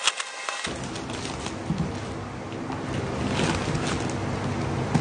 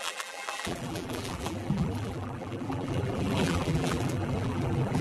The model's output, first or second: second